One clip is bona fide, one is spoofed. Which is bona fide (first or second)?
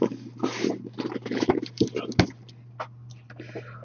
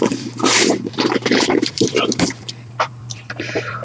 first